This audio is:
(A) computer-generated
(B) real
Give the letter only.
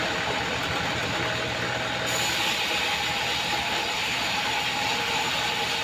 B